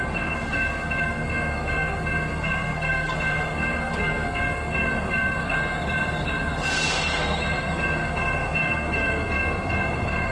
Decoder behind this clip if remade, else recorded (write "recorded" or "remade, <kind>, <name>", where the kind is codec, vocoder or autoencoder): remade, codec, SNAC